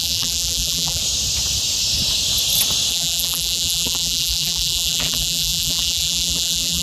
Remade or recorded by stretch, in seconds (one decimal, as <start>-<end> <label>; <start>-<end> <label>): 0.0-1.0 remade; 1.0-2.9 recorded; 2.9-6.8 remade